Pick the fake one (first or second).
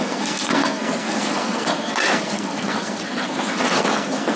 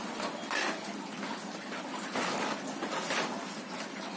first